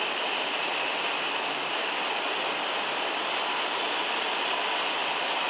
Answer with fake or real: real